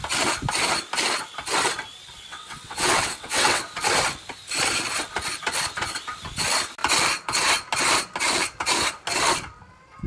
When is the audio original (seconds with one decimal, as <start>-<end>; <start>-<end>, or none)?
0.0-2.3; 3.6-10.1